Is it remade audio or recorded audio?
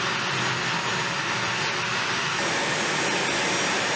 recorded